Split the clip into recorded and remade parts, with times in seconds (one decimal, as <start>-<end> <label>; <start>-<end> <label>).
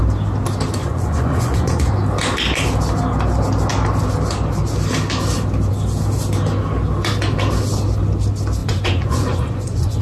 0.0-0.8 recorded; 0.8-1.9 remade; 1.9-8.6 recorded; 8.6-10.0 remade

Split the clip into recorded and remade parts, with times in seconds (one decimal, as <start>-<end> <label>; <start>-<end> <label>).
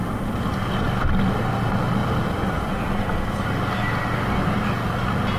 0.0-5.4 recorded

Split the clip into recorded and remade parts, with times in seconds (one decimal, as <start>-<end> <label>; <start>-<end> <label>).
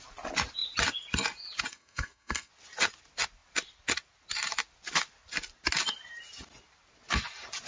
0.0-1.7 recorded; 1.7-2.5 remade; 2.5-7.7 recorded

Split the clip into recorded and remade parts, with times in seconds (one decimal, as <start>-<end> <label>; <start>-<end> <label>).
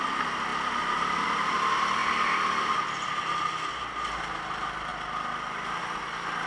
0.0-6.5 recorded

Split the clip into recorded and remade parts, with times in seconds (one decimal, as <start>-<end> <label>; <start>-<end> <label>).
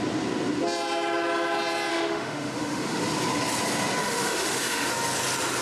0.0-1.9 recorded; 1.9-3.0 remade; 3.0-4.0 recorded; 4.0-4.9 remade; 4.9-5.6 recorded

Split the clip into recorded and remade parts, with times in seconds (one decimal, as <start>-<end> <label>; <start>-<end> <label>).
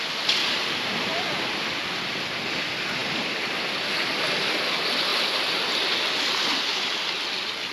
0.0-0.4 recorded; 0.4-2.1 remade; 2.1-7.7 recorded